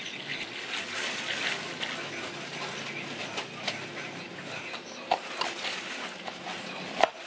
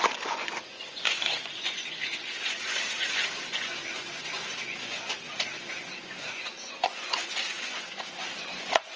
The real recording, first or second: first